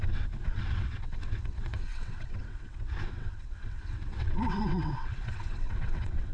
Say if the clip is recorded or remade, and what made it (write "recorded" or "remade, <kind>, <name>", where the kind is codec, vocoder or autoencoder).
remade, vocoder, WaveNeXt